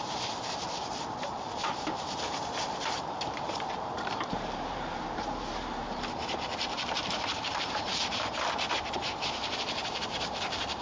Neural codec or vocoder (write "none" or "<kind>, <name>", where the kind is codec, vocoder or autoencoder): vocoder, BigVGAN v2